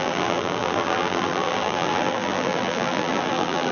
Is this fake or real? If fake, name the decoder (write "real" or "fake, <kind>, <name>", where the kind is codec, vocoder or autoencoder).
fake, vocoder, BigVGAN v2